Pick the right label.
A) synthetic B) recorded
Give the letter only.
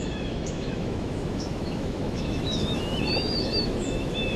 A